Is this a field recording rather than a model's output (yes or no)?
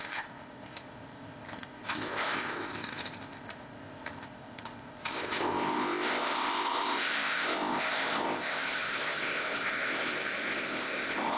no